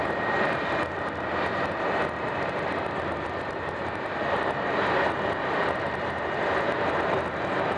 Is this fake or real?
fake